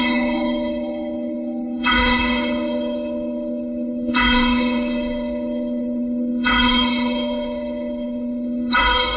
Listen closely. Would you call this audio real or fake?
fake